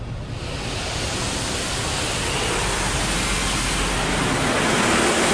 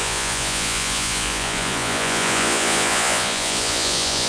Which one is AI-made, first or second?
second